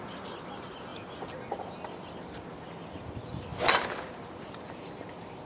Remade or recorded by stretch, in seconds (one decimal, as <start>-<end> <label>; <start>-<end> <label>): 0.0-5.5 recorded